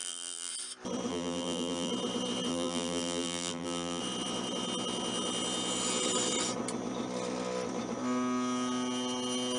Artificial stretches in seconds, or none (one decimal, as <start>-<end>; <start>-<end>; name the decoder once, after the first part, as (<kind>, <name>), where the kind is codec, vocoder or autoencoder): 0.0-0.5 (vocoder, BigVGAN v2); 1.1-1.9; 2.5-4.0